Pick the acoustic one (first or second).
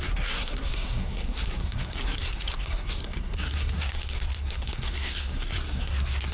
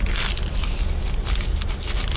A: second